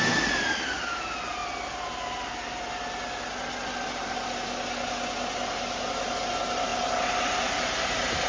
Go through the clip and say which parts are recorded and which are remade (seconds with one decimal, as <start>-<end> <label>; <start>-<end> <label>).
0.0-8.3 recorded